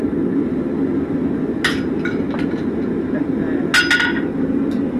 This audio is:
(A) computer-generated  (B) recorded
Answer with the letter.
B